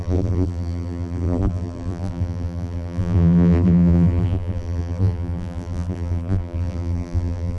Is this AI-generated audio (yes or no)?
yes